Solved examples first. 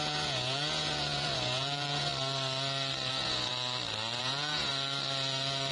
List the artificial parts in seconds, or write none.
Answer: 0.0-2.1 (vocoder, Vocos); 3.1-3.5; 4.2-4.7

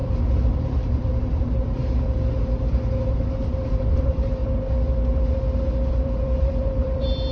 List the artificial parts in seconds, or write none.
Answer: 0.0-1.8 (vocoder, BigVGAN v2); 3.1-4.4; 5.9-7.3

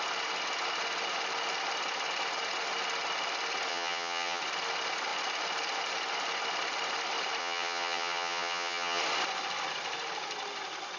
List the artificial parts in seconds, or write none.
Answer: 3.7-4.4 (vocoder, HiFi-GAN); 7.4-9.0

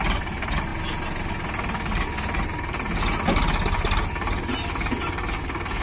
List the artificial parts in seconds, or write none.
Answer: none

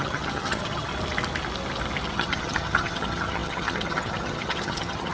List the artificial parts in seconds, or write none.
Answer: 0.0-0.9 (vocoder, HiFi-GAN); 2.1-5.1

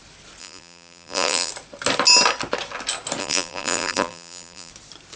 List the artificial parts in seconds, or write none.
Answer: 0.4-1.5 (vocoder, BigVGAN v2); 3.2-4.7

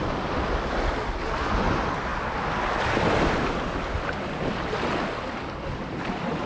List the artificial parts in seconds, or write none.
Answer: none

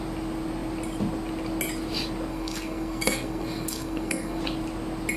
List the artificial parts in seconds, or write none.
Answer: 2.3-4.4 (codec, SNAC)